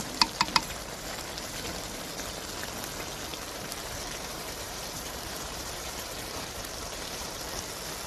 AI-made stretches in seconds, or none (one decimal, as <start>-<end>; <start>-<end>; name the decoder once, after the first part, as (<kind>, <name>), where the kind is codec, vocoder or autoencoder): 3.3-7.4 (vocoder, BigVGAN v2)